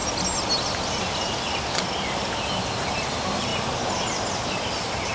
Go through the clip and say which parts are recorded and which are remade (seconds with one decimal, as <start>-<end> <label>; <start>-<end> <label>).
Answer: 0.0-5.1 recorded